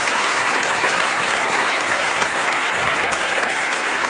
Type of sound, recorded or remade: remade